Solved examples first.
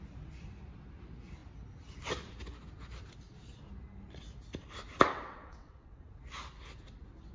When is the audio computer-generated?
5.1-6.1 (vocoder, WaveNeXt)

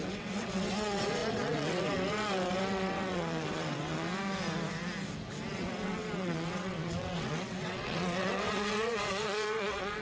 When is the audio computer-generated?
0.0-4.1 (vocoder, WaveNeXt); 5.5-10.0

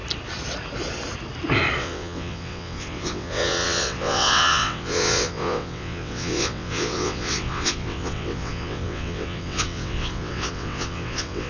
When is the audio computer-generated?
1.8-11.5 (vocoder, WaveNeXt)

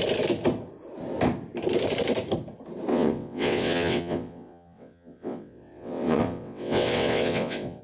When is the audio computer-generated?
2.9-7.8 (vocoder, WaveNeXt)